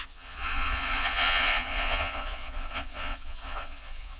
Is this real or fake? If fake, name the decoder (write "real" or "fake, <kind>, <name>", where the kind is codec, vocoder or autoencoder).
fake, vocoder, Vocos